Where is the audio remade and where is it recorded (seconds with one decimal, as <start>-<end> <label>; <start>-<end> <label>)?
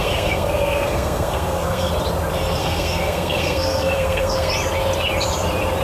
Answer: 0.0-1.9 remade; 1.9-2.6 recorded; 2.6-4.5 remade; 4.5-5.8 recorded